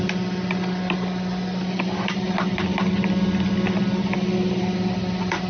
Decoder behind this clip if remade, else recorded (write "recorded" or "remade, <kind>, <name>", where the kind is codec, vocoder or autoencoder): recorded